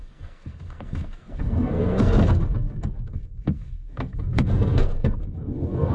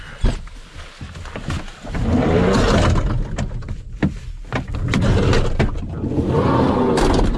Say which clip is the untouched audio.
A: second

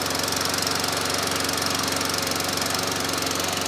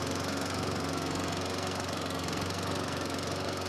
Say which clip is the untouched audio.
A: first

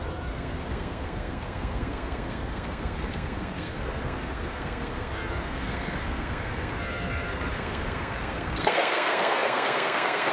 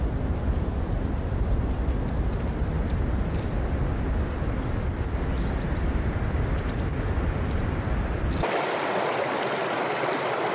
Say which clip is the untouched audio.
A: second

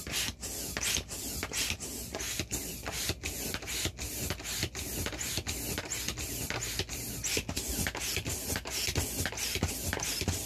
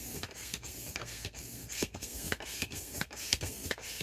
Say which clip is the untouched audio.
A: first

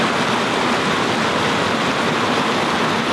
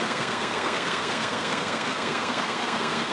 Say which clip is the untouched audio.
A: first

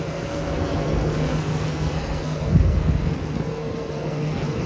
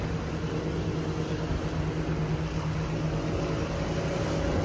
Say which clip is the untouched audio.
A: second